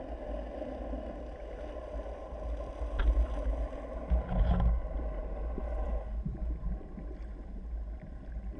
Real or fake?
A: real